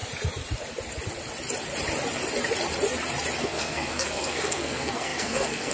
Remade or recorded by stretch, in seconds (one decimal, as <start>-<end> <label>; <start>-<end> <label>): 0.0-3.4 recorded; 3.4-5.7 remade